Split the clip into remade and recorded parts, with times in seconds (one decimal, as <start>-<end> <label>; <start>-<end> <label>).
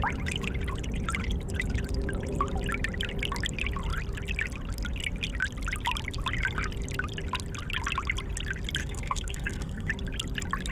0.0-8.8 recorded; 8.8-9.9 remade; 9.9-10.7 recorded